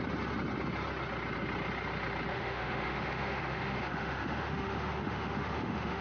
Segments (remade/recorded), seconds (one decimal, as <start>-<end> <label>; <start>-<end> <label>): 0.0-2.3 recorded; 2.3-6.0 remade